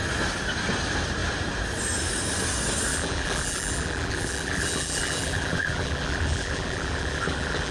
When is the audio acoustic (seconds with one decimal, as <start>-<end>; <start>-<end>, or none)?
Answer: 0.0-2.9

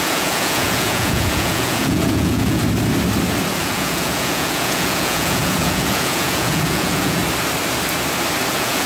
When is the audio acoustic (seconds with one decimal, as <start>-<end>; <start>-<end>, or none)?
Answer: 2.6-3.5; 7.2-8.5

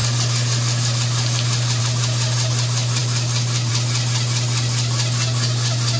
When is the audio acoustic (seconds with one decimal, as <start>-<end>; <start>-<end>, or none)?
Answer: 0.0-6.0

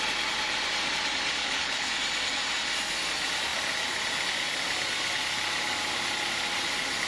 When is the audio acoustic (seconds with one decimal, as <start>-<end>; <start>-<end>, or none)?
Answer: 0.0-1.4; 1.9-7.1

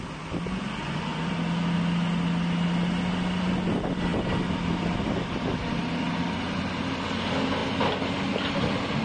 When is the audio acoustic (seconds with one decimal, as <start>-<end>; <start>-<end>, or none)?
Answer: 0.0-0.8; 1.3-9.0

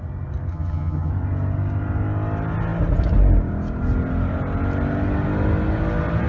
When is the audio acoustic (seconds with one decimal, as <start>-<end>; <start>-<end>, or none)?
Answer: 0.0-0.5; 1.1-6.3